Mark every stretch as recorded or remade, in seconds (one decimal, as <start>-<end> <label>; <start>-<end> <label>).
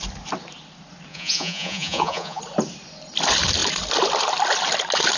0.0-1.1 recorded; 1.1-2.4 remade; 2.4-5.2 recorded